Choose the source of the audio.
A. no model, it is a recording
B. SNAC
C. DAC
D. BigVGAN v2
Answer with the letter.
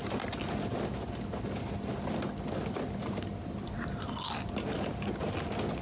A